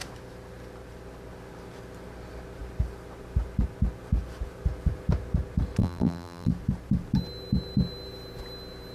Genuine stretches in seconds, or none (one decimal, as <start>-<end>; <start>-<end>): 0.0-5.8; 6.5-8.9